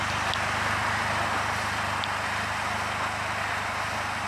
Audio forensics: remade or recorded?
recorded